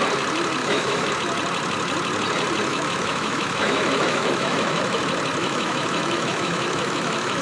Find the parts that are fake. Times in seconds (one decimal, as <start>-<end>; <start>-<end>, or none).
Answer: 0.6-1.1; 2.7-5.0; 5.4-7.4